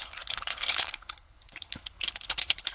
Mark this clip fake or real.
fake